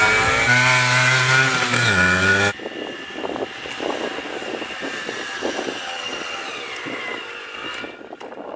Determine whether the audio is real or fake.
real